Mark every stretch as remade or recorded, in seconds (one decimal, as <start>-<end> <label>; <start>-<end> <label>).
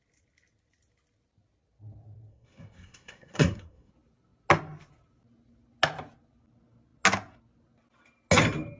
0.0-2.3 recorded; 2.3-3.9 remade; 3.9-8.8 recorded